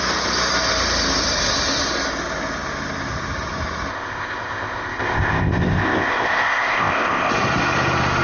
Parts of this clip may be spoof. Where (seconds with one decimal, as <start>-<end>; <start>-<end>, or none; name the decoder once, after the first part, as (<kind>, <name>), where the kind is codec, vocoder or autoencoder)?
3.9-7.3 (codec, ZipCodec)